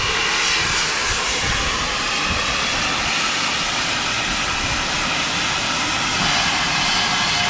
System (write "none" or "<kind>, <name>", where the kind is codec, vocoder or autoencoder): none